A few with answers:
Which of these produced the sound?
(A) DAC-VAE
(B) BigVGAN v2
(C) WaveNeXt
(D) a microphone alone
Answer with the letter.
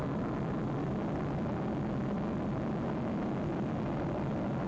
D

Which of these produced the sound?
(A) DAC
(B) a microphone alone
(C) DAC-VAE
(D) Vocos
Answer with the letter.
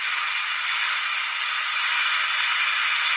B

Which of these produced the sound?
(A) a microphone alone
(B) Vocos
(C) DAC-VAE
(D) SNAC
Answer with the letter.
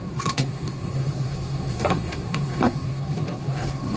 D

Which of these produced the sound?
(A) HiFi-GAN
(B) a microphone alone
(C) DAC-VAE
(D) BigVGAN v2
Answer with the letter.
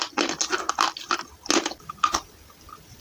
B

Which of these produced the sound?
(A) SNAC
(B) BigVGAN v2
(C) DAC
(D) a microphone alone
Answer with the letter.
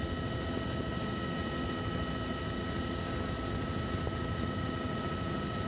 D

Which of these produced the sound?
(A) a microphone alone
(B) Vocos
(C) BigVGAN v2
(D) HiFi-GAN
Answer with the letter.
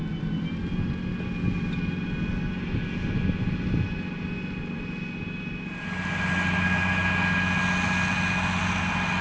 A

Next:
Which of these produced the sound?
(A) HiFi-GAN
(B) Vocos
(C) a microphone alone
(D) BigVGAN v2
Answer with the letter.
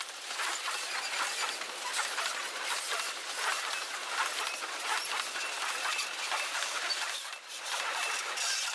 C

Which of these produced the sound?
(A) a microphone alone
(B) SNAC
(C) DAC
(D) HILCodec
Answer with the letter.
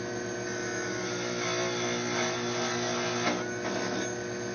A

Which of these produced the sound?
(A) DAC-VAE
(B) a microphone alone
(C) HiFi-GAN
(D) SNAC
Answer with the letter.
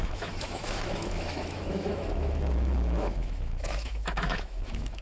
A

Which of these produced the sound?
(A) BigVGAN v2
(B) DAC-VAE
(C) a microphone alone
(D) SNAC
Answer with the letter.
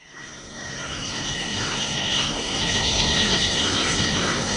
D